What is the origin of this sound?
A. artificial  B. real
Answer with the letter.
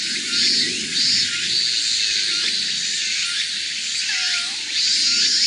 B